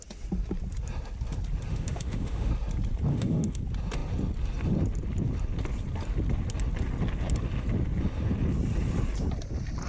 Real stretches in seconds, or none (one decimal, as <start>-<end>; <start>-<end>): 0.0-1.7; 2.5-3.1; 3.6-9.9